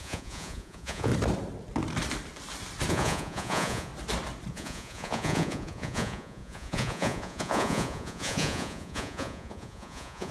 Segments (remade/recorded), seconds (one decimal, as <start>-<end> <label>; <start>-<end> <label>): 0.0-1.1 remade; 1.1-2.9 recorded; 2.9-3.9 remade; 3.9-4.5 recorded; 4.5-10.3 remade